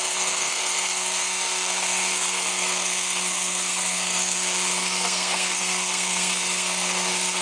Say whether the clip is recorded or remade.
remade